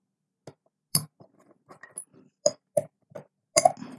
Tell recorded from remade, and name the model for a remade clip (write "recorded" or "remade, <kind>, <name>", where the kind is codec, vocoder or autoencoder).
recorded